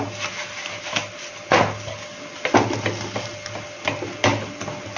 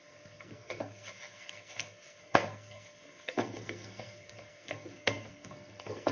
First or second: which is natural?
first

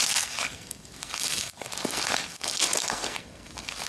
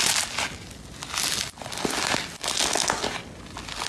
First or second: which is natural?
second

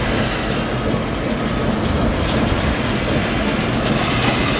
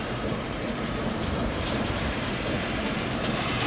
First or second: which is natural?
first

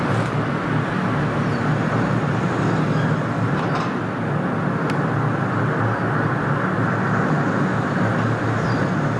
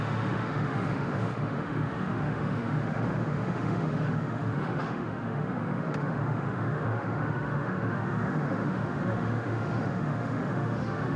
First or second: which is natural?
first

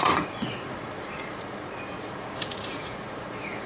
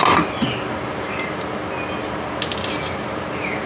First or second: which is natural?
second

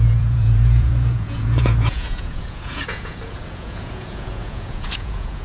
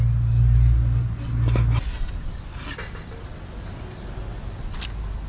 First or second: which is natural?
second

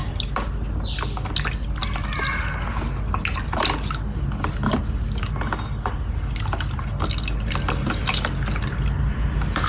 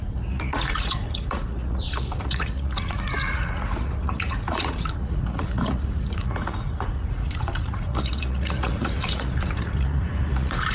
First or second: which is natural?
first